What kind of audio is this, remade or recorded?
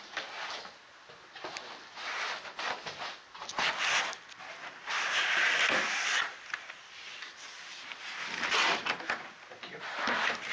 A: recorded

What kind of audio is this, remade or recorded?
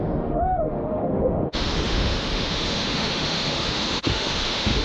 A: remade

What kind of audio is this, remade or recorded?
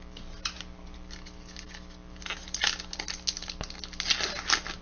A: recorded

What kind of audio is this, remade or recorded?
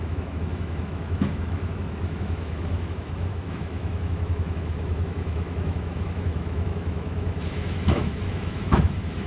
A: remade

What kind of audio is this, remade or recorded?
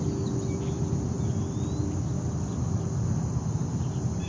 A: recorded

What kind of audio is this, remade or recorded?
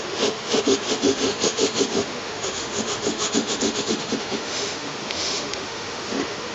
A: remade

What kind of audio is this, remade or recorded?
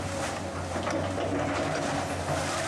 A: recorded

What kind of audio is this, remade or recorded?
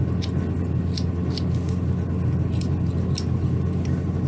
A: recorded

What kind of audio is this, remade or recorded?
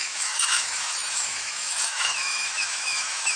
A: remade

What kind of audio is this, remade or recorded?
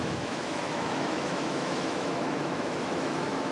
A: remade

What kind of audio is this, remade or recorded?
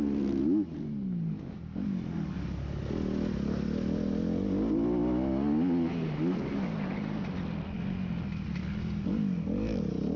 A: recorded